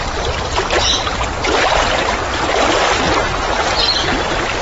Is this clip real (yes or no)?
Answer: yes